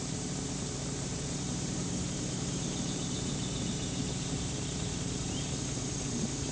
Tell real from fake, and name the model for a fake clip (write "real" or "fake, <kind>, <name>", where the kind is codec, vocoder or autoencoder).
fake, vocoder, BigVGAN v2